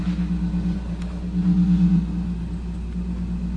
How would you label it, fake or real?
real